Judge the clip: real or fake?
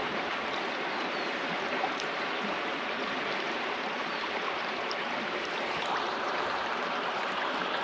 fake